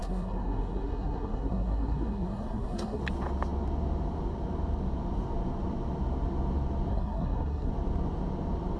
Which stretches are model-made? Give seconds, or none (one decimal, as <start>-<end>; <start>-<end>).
0.0-3.0; 6.9-7.7

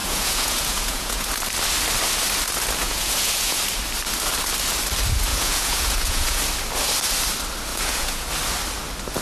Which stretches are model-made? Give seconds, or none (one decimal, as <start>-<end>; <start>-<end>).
0.0-1.3; 2.8-3.6; 5.3-6.4; 7.7-8.3

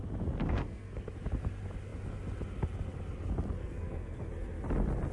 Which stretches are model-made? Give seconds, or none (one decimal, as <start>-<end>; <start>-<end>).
0.4-1.1; 3.6-4.3

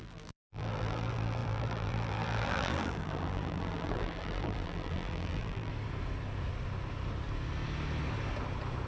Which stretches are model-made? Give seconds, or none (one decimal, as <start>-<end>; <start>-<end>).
0.0-5.7

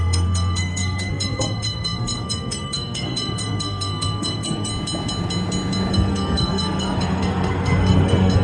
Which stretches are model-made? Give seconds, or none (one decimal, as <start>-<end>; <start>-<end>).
0.0-4.7; 5.9-8.4